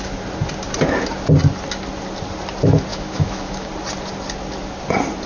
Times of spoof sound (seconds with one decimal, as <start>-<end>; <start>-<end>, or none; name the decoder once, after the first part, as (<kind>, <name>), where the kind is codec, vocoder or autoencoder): 2.9-3.7 (autoencoder, DAC-VAE)